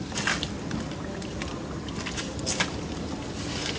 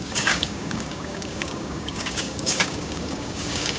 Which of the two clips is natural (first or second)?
first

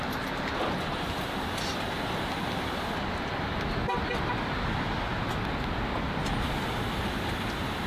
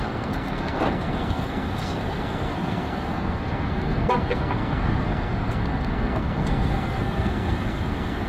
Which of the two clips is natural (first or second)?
first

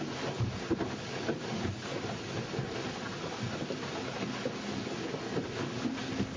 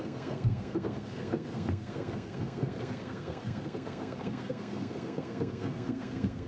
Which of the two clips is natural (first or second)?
first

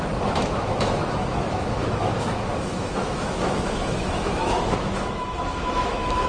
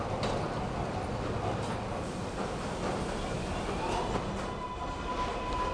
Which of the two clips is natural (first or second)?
second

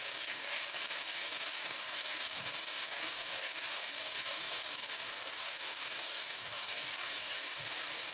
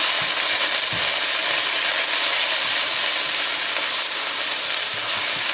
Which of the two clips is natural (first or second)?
second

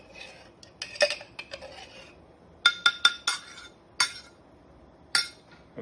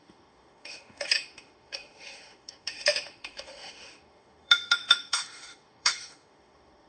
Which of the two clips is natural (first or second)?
first